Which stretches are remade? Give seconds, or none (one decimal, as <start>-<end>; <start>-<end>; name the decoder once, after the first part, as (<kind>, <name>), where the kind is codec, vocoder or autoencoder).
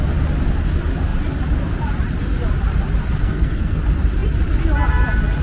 3.2-3.8 (codec, SNAC)